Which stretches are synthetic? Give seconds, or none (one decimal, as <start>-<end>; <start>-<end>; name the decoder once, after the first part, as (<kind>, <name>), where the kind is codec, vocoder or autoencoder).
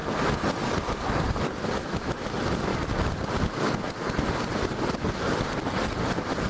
none